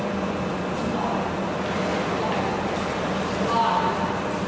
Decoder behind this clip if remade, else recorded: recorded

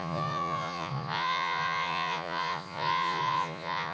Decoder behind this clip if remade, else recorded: remade, vocoder, Vocos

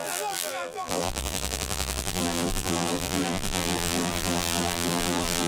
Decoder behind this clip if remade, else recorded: remade, vocoder, BigVGAN v2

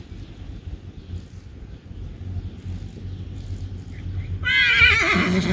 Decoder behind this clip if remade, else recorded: recorded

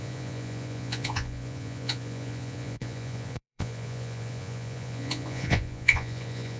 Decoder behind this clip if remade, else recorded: remade, vocoder, Vocos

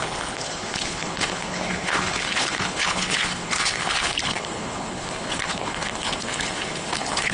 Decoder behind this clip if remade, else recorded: remade, codec, HILCodec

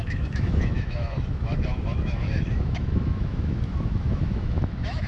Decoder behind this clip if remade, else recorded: remade, autoencoder, DAC-VAE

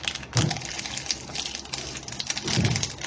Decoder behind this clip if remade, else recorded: recorded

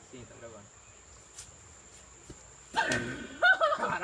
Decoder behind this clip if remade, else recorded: recorded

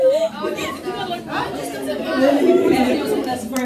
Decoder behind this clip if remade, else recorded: remade, vocoder, BigVGAN v2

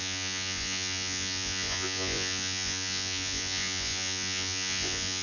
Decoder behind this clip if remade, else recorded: remade, vocoder, Vocos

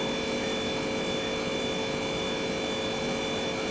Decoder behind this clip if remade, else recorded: recorded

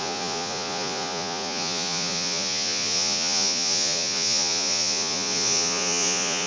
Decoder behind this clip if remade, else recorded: remade, vocoder, Vocos